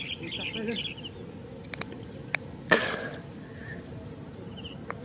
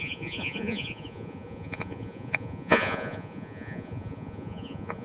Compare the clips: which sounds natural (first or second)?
first